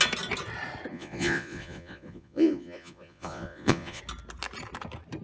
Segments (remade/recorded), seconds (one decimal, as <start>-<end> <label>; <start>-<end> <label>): 0.0-0.9 recorded; 0.9-4.0 remade; 4.0-5.2 recorded